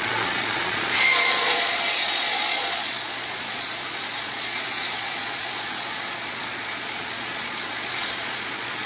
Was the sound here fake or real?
fake